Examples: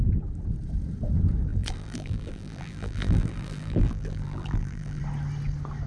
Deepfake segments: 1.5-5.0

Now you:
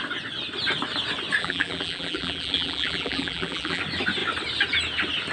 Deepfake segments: 1.4-3.8

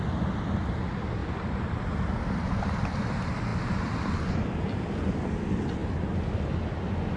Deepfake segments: 1.2-1.7

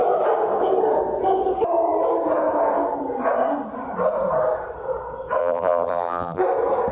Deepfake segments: 5.4-6.4